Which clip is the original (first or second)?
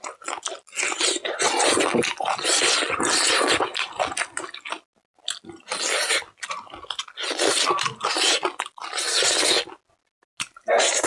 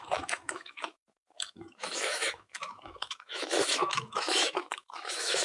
first